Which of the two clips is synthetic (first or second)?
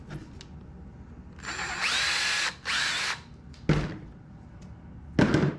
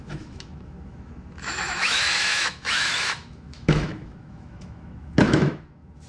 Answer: second